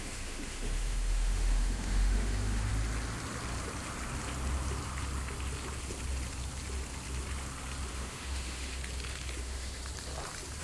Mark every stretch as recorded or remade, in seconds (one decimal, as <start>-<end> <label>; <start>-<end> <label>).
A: 0.0-2.7 remade; 2.7-7.9 recorded; 7.9-8.8 remade; 8.8-9.4 recorded; 9.4-9.8 remade; 9.8-10.6 recorded